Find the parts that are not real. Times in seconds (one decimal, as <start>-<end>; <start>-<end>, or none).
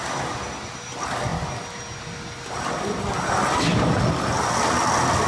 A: none